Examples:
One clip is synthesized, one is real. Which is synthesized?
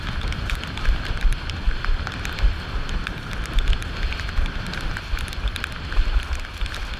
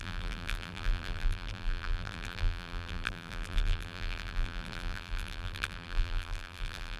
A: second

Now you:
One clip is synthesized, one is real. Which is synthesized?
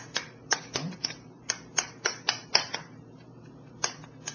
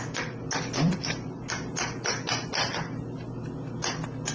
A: first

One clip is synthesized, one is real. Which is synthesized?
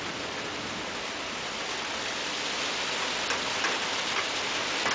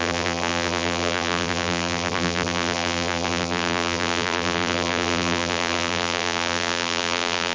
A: second